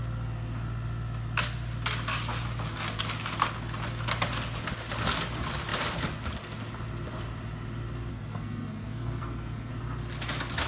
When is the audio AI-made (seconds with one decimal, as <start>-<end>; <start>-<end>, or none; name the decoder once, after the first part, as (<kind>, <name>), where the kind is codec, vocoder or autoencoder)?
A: 8.1-9.7 (codec, SNAC)